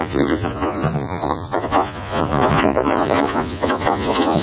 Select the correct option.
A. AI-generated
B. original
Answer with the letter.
A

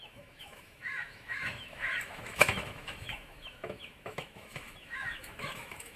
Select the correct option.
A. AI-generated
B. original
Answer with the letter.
A